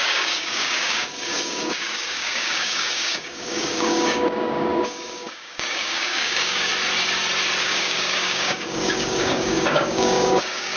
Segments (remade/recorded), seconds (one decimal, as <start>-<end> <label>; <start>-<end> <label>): 0.0-6.7 remade; 6.7-7.6 recorded; 7.6-10.8 remade